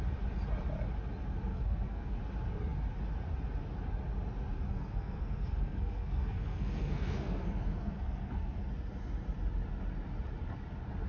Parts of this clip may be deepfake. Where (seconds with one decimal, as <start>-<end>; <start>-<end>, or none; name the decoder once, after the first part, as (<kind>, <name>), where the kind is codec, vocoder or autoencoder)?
1.5-2.2 (codec, SNAC); 4.7-8.6